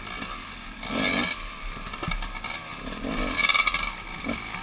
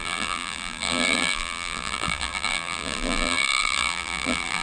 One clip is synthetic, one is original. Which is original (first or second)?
first